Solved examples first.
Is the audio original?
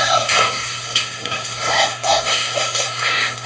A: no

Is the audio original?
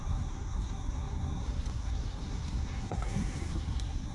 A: no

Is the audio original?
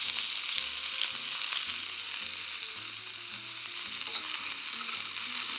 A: yes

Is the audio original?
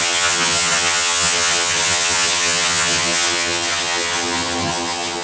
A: no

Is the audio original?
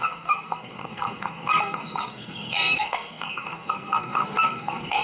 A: no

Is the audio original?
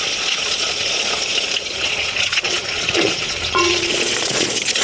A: no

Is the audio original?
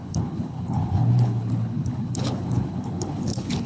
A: no